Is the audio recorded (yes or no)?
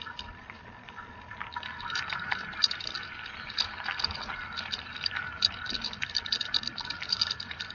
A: yes